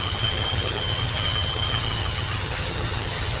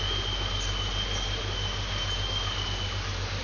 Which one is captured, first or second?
second